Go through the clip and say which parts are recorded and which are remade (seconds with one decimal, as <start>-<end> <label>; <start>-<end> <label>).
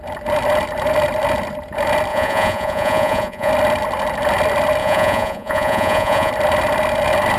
0.0-2.1 recorded; 2.1-3.5 remade; 3.5-4.8 recorded; 4.8-6.3 remade; 6.3-7.4 recorded